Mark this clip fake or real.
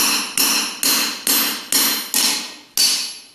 real